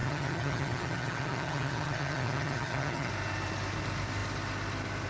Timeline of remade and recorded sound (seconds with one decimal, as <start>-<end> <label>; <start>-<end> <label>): 0.0-3.1 remade; 3.1-5.1 recorded